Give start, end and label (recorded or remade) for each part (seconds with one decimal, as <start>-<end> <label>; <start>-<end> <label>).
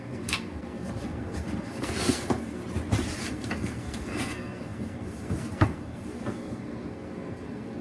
0.0-2.6 remade; 2.6-3.2 recorded; 3.2-7.8 remade